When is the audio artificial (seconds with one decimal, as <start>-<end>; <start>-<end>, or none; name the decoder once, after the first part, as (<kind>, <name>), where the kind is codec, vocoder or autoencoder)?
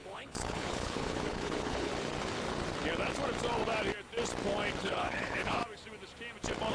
0.0-1.9 (codec, HILCodec); 4.8-5.6